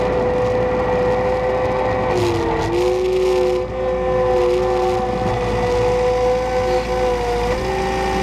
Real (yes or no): yes